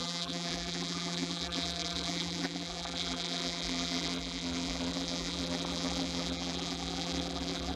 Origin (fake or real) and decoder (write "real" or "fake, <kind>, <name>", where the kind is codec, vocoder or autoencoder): fake, vocoder, BigVGAN v2